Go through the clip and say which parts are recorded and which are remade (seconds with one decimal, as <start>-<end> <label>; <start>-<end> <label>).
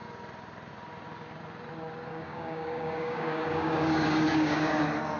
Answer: 0.0-2.1 recorded; 2.1-4.8 remade; 4.8-5.2 recorded